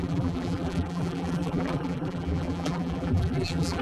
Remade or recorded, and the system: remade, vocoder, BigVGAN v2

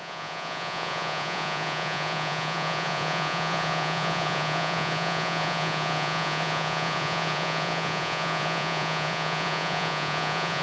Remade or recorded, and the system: remade, vocoder, Vocos